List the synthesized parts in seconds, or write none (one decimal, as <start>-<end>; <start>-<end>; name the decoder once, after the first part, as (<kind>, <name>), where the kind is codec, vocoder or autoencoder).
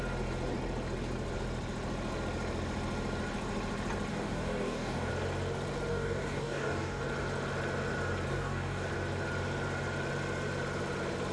4.1-5.1 (codec, DAC); 5.9-7.0; 8.3-8.9